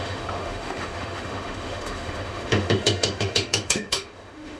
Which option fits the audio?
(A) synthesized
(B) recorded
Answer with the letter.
A